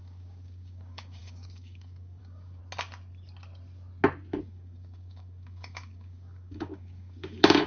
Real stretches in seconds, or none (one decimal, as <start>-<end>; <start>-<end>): 2.6-4.4